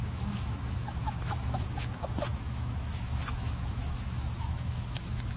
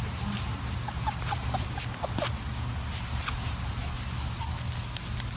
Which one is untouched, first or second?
second